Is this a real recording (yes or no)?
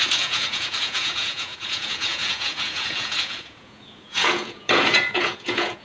no